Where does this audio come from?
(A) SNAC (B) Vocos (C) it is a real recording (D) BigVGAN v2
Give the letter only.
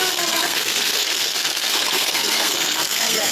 A